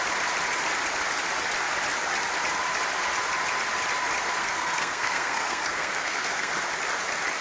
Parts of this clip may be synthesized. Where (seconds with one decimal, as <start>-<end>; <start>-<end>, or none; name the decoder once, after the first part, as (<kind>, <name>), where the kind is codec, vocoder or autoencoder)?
4.4-6.5 (codec, SNAC)